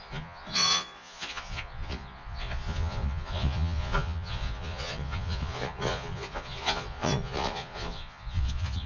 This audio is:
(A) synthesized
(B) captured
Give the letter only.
A